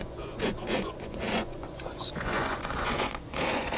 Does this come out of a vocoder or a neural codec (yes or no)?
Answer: yes